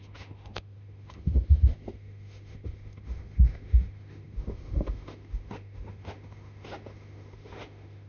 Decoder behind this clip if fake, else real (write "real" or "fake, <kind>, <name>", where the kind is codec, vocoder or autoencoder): fake, autoencoder, DAC-VAE